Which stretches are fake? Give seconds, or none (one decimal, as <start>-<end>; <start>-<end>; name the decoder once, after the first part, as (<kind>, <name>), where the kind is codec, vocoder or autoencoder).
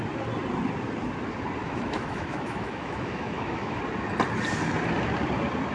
1.6-3.8 (autoencoder, DAC-VAE)